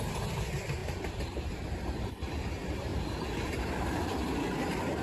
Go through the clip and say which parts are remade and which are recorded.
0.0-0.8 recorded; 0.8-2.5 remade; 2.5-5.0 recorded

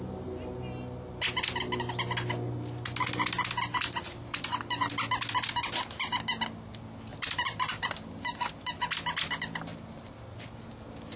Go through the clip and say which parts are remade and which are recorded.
0.0-7.1 recorded; 7.1-8.7 remade; 8.7-11.2 recorded

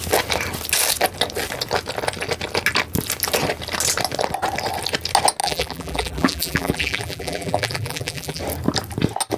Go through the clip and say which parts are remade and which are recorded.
0.0-5.4 recorded; 5.4-8.4 remade; 8.4-9.4 recorded

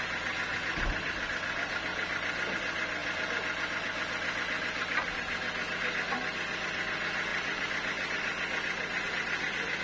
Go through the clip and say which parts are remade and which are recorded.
0.0-9.8 recorded

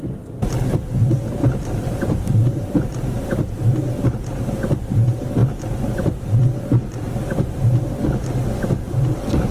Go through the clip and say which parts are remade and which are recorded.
0.0-1.4 recorded; 1.4-2.8 remade; 2.8-9.5 recorded

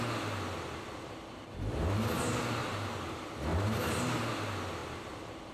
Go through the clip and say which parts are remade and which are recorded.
0.0-2.6 recorded; 2.6-3.1 remade; 3.1-3.5 recorded; 3.5-4.3 remade; 4.3-4.8 recorded; 4.8-5.5 remade